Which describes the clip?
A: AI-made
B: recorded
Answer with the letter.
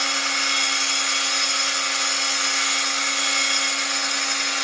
B